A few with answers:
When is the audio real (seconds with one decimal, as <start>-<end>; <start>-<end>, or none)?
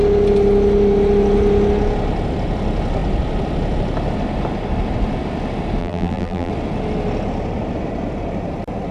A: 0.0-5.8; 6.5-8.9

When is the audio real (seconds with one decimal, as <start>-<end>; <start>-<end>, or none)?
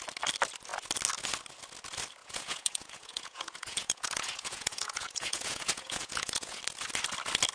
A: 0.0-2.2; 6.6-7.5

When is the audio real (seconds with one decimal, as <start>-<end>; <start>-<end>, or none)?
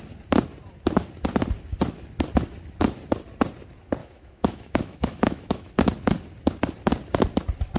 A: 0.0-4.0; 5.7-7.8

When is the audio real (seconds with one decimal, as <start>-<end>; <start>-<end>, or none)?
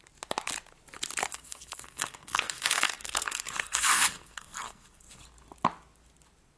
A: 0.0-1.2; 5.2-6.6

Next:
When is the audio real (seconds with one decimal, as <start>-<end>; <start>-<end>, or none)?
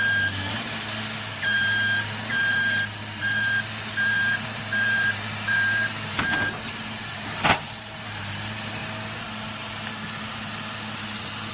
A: 0.0-0.5; 8.8-9.9